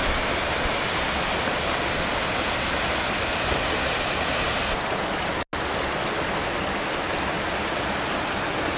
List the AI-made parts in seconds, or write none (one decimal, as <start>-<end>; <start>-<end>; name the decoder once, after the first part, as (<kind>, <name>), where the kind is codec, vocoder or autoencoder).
none